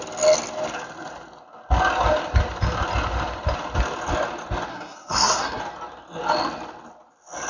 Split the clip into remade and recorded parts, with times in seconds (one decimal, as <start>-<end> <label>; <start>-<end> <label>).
0.0-4.7 recorded; 4.7-5.6 remade; 5.6-7.5 recorded